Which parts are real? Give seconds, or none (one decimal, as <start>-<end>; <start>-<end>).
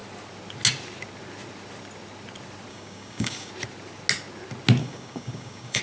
0.0-2.7; 3.5-4.8